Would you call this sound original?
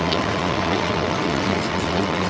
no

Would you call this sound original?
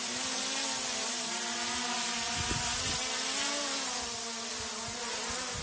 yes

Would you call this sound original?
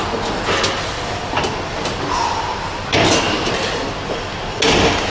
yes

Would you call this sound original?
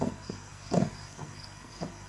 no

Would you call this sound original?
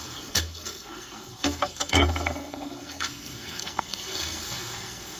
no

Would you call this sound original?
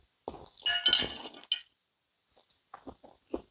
yes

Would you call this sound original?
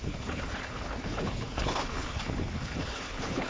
no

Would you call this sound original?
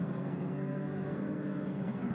no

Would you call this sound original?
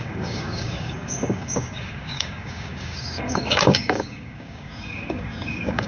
no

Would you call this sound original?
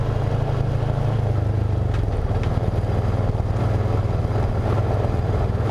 yes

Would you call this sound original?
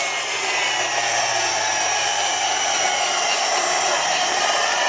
no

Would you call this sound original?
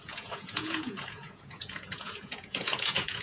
no